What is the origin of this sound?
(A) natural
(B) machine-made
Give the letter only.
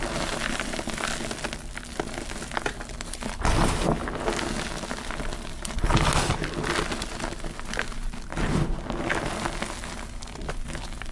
A